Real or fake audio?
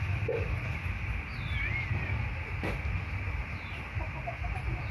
real